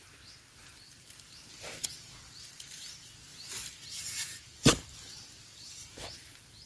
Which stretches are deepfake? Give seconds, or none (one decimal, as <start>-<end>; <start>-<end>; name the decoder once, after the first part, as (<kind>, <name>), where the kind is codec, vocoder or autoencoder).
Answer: none